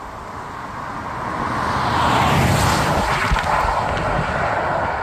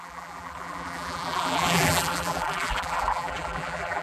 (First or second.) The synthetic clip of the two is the second